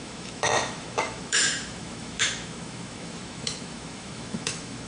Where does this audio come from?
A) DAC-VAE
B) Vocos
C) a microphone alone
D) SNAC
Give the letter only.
A